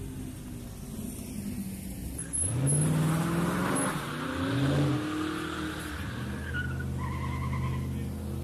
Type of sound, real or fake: real